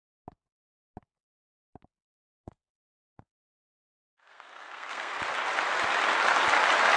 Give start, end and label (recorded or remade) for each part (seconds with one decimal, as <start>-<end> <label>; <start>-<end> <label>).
0.0-2.1 recorded; 2.1-5.2 remade; 5.2-7.0 recorded

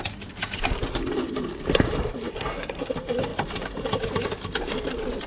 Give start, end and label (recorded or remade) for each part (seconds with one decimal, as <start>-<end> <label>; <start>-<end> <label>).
0.0-2.3 recorded; 2.3-2.9 remade; 2.9-5.3 recorded